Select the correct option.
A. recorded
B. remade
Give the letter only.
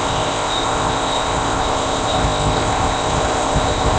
B